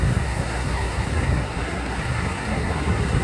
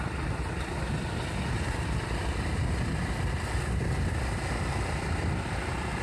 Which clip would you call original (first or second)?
second